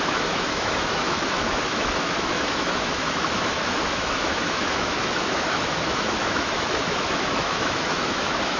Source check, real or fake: fake